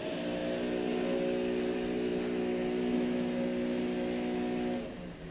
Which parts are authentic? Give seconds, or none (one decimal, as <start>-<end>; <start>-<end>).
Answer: 0.0-5.3